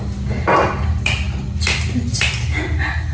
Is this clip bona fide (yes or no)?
yes